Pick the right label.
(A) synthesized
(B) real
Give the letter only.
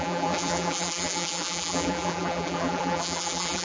A